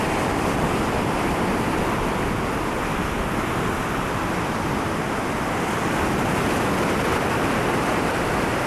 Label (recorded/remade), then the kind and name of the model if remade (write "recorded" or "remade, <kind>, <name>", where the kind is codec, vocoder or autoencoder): recorded